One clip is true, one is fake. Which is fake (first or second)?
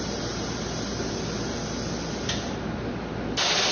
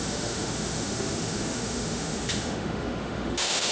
second